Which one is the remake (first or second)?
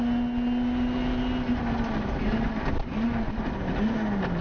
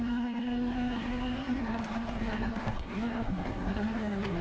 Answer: second